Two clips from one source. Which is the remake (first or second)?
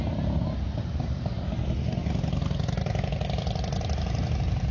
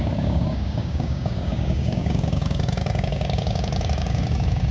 second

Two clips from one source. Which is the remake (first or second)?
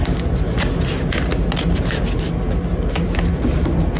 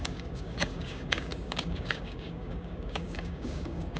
second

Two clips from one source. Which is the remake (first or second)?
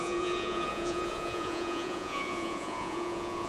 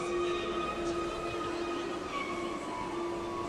first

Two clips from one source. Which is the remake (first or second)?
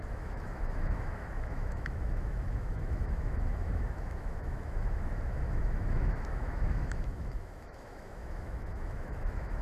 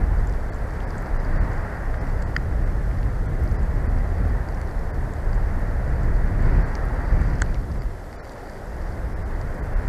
first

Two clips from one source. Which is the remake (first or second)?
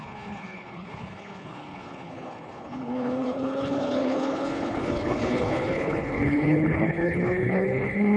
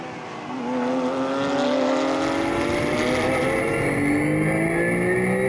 first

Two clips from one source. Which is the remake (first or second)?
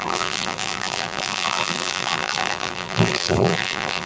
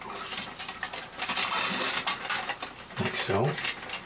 first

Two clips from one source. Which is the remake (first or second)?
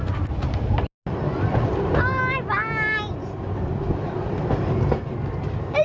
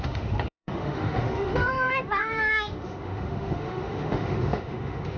second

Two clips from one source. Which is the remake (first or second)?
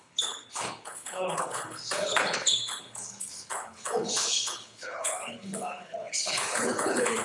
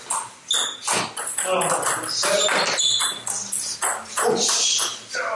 first